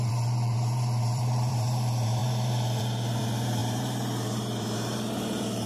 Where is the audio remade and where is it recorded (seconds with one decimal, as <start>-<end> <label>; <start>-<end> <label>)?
0.0-5.7 remade